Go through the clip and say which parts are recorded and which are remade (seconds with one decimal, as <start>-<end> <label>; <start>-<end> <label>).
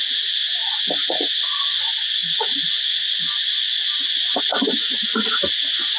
0.0-0.6 remade; 0.6-1.6 recorded; 1.6-2.2 remade; 2.2-4.4 recorded; 4.4-6.0 remade